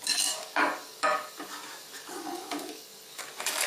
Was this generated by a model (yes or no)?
yes